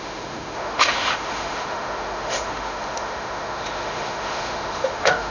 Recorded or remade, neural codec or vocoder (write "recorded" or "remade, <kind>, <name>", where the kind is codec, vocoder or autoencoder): remade, autoencoder, DAC-VAE